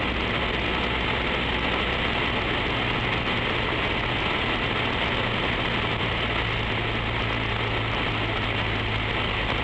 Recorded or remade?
recorded